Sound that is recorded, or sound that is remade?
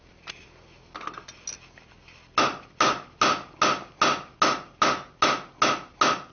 recorded